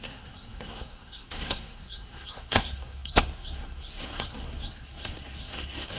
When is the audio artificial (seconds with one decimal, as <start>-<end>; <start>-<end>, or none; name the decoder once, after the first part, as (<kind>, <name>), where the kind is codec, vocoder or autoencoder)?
0.0-6.0 (codec, SNAC)